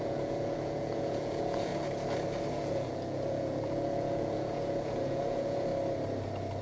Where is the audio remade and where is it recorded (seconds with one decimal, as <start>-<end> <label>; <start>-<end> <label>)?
0.0-1.7 remade; 1.7-2.5 recorded; 2.5-5.7 remade; 5.7-6.6 recorded